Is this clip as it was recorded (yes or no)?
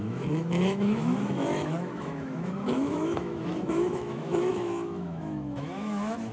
no